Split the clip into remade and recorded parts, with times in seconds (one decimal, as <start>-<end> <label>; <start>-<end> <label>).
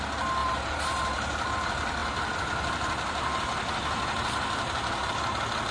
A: 0.0-0.4 recorded; 0.4-1.5 remade; 1.5-5.7 recorded